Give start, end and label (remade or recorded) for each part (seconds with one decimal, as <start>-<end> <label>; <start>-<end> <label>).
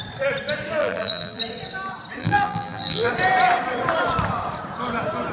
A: 0.0-0.8 recorded; 0.8-1.4 remade; 1.4-2.2 recorded; 2.2-3.1 remade; 3.1-5.3 recorded